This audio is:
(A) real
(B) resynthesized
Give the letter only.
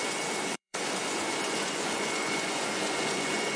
B